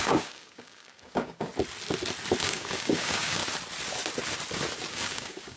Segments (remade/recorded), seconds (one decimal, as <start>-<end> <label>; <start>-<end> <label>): 0.0-1.5 remade; 1.5-2.4 recorded; 2.4-3.4 remade; 3.4-4.9 recorded; 4.9-5.6 remade